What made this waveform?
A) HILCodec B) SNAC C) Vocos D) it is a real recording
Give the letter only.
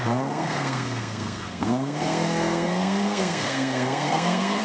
B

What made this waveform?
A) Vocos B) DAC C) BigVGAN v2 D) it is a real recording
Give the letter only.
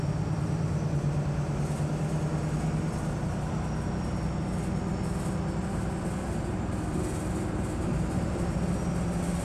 D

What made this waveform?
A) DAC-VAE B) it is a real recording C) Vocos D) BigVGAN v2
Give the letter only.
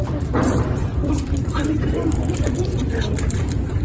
D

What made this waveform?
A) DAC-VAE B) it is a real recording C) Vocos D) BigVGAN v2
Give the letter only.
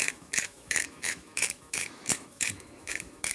A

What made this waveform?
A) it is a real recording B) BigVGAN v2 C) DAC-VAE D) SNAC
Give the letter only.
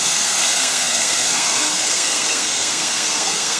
D